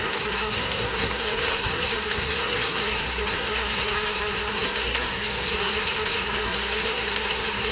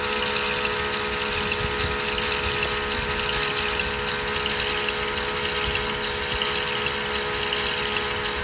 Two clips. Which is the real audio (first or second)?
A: second